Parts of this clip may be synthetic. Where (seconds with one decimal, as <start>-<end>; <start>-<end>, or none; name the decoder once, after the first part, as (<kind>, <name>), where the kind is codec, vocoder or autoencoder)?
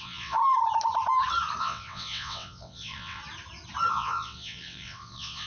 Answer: 0.0-0.4 (vocoder, WaveNeXt); 1.6-3.2; 3.9-5.5